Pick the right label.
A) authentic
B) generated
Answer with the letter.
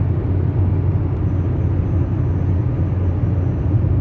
A